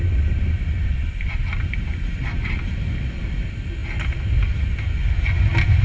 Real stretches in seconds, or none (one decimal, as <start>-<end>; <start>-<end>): 0.0-5.8